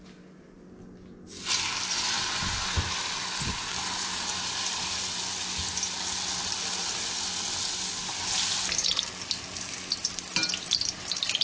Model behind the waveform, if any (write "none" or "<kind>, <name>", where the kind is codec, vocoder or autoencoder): none